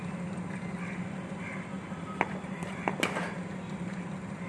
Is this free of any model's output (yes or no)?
yes